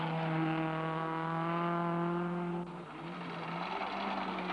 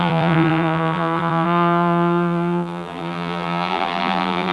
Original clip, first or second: first